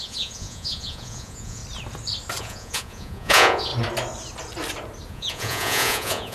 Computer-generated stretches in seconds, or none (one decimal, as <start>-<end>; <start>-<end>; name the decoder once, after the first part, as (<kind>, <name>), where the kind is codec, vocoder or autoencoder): 0.0-1.6 (vocoder, Vocos); 2.4-3.7; 5.1-6.3